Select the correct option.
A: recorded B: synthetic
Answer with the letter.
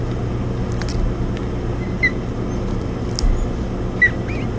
A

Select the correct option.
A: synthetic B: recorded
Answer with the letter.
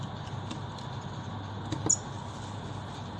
B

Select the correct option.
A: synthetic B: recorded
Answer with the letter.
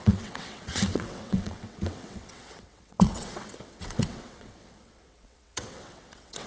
A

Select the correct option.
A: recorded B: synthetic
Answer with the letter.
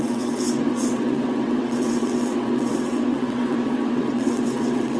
B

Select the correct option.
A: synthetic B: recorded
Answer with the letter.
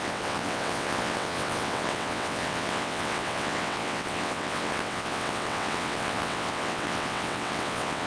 A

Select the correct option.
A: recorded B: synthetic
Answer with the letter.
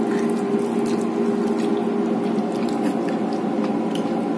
A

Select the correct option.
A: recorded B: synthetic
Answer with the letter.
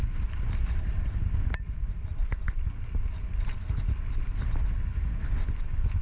A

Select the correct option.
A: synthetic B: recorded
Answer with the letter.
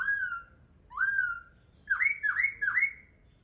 B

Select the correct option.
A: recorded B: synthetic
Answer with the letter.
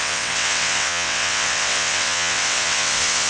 B